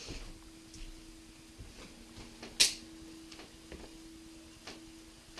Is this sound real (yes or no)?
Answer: yes